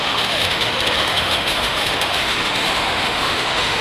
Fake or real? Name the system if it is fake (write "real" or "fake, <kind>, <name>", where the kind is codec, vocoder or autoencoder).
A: fake, autoencoder, DAC-VAE